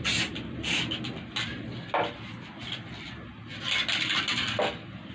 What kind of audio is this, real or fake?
real